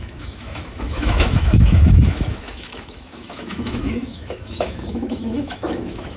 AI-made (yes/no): yes